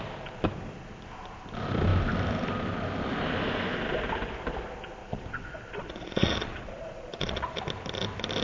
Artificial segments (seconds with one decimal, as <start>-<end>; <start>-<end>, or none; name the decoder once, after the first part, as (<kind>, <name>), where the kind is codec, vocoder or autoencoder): 5.0-7.6 (vocoder, Vocos)